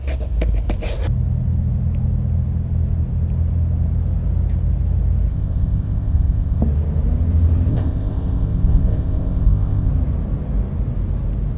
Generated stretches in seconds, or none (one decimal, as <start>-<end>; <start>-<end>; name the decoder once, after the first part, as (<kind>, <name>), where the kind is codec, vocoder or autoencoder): 5.3-6.6 (codec, ZipCodec); 7.7-9.9